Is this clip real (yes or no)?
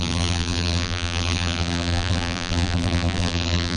no